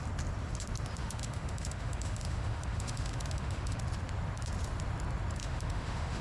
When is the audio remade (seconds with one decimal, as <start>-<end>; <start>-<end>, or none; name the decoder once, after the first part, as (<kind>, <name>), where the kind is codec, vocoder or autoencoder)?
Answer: 1.0-3.8 (autoencoder, DAC-VAE); 5.4-6.2